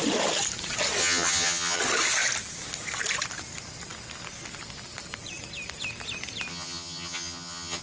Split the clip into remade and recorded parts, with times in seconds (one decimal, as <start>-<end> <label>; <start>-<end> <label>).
0.0-1.0 recorded; 1.0-1.8 remade; 1.8-6.5 recorded; 6.5-7.8 remade